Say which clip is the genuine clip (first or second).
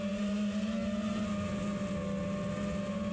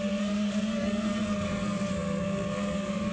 first